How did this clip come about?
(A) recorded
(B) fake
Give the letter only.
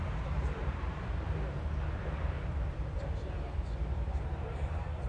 B